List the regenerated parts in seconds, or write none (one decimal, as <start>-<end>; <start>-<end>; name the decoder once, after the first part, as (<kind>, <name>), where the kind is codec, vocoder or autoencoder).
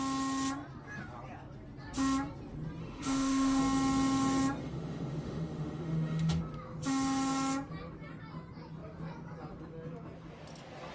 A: 2.8-3.6 (autoencoder, DAC-VAE); 4.6-6.4